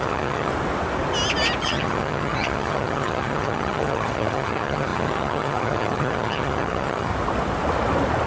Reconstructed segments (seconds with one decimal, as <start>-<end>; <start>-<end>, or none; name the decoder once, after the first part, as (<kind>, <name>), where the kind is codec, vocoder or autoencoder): 0.0-0.5 (vocoder, HiFi-GAN); 1.6-7.1